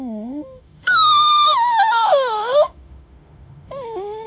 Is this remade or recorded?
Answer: remade